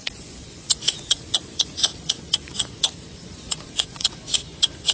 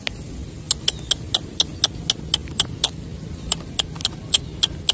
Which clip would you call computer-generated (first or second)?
first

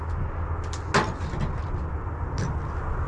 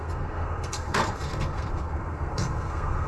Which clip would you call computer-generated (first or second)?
second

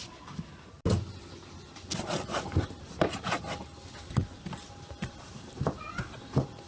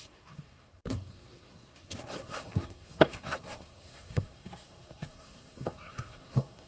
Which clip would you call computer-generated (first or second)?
second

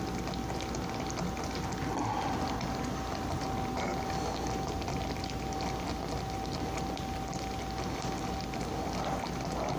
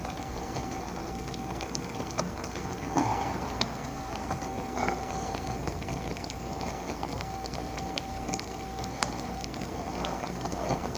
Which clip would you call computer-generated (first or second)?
second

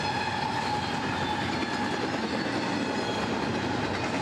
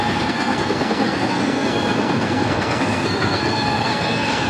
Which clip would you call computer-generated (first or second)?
second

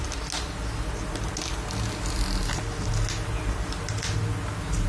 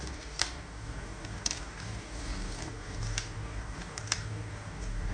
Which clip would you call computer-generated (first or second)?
second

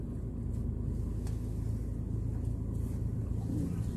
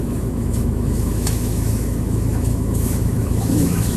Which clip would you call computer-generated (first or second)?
second